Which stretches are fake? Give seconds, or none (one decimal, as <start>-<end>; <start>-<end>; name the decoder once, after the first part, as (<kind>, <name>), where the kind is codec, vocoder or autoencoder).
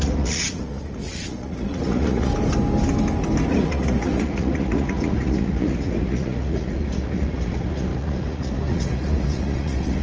0.0-2.3 (vocoder, Vocos); 3.5-10.0